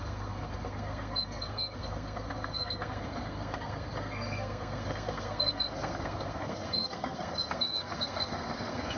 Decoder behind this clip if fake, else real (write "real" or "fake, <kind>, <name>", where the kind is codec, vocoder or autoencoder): fake, codec, SNAC